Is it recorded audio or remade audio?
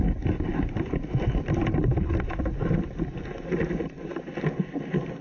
recorded